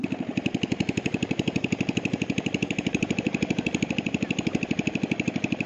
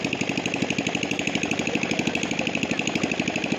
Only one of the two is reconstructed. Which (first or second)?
first